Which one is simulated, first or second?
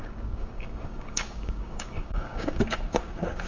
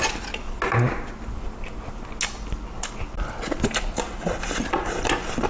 first